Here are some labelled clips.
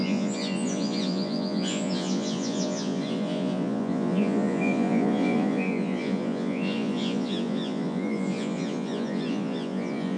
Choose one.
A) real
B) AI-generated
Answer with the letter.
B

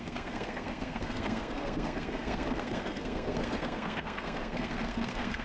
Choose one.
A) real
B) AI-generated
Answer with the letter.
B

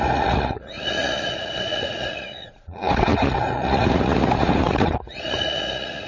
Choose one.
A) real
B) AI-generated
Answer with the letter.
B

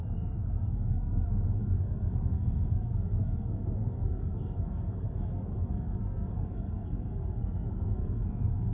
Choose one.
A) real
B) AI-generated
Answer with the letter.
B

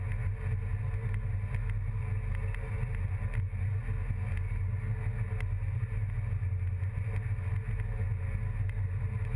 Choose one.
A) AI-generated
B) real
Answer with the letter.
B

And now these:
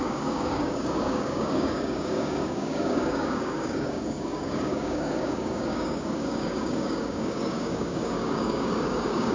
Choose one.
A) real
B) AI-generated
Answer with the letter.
B